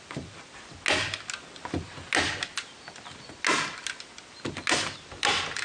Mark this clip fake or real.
real